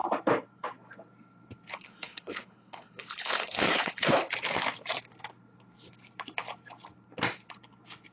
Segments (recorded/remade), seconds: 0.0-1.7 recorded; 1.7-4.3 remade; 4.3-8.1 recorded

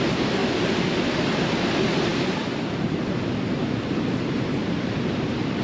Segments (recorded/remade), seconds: 0.0-5.6 recorded

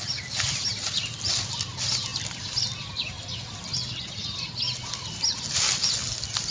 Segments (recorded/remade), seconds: 0.0-6.5 recorded

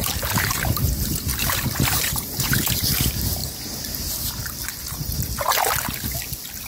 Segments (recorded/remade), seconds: 0.0-3.4 remade; 3.4-6.7 recorded

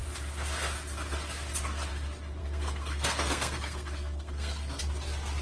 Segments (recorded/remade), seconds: 0.0-2.4 recorded; 2.4-4.8 remade; 4.8-5.4 recorded

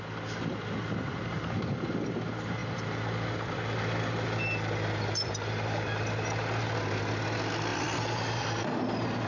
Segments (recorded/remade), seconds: 0.0-2.6 recorded; 2.6-6.1 remade; 6.1-7.7 recorded; 7.7-8.4 remade; 8.4-9.3 recorded

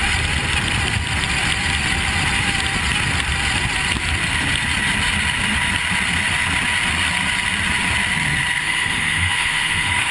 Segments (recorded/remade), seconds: 0.0-8.6 recorded; 8.6-10.1 remade

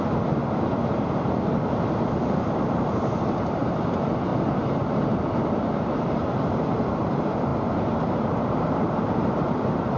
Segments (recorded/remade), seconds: 0.0-0.4 remade; 0.4-1.9 recorded; 1.9-4.3 remade; 4.3-4.8 recorded; 4.8-10.0 remade